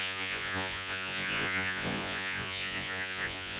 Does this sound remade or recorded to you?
remade